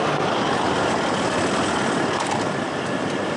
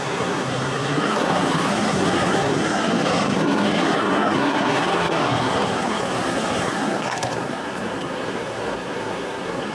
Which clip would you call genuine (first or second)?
first